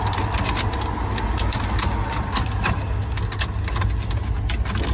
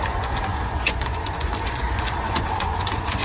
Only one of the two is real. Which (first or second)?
first